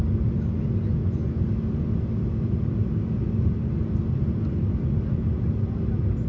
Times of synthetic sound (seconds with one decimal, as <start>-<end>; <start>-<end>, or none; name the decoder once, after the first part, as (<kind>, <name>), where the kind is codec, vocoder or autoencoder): none